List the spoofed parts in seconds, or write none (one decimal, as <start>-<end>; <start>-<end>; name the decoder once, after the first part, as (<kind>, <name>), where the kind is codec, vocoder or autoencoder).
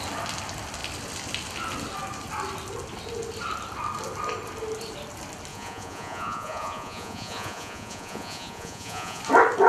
5.5-9.2 (vocoder, Vocos)